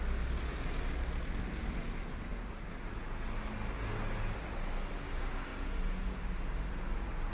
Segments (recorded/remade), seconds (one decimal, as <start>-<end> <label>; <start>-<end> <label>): 0.0-5.5 recorded; 5.5-6.2 remade; 6.2-7.3 recorded